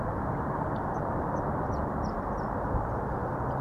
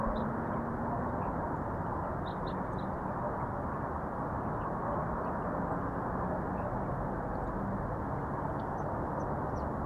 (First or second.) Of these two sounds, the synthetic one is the first